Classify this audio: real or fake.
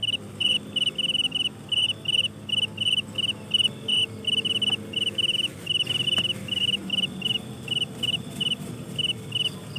real